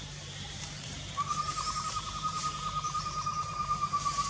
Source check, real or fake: fake